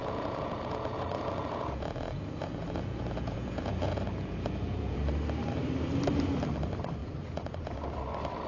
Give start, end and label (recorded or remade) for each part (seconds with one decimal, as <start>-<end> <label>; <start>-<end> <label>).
0.0-5.0 remade; 5.0-7.0 recorded; 7.0-7.8 remade; 7.8-8.5 recorded